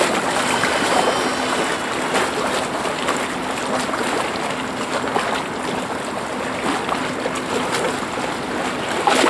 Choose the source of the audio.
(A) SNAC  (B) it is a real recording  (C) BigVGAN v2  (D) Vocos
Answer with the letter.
B